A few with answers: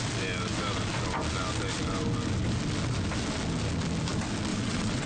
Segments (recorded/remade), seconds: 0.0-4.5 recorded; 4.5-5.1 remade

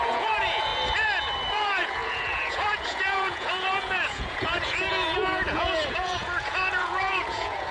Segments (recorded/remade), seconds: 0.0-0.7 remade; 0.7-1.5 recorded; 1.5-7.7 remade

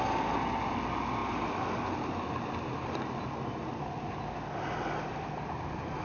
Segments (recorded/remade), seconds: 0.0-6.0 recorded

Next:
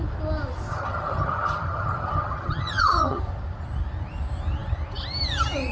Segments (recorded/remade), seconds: 0.0-0.7 recorded; 0.7-3.2 remade; 3.2-5.7 recorded

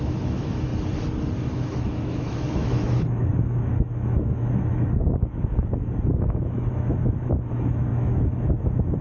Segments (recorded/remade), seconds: 0.0-0.7 remade; 0.7-1.5 recorded; 1.5-9.0 remade